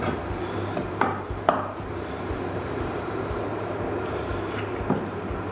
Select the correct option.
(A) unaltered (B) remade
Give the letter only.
B